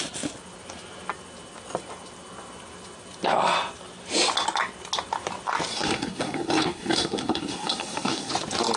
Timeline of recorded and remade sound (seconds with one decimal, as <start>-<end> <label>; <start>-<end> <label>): 0.0-5.7 recorded; 5.7-8.3 remade; 8.3-8.8 recorded